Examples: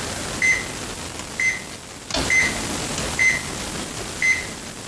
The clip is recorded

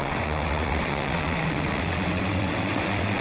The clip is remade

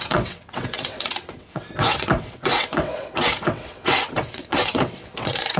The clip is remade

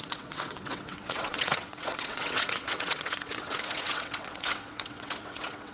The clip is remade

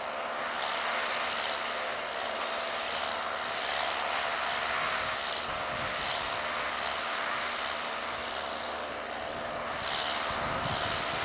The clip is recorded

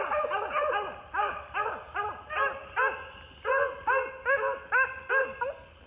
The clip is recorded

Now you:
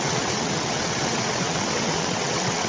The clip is remade